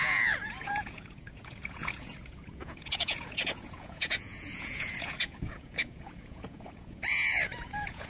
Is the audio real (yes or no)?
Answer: no